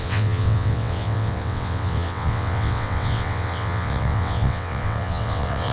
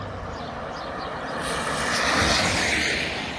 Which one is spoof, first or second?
first